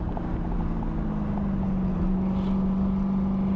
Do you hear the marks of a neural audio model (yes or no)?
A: no